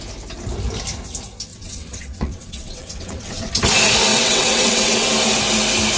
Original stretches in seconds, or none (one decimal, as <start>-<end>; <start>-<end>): 0.0-1.5; 3.5-4.1; 5.1-6.0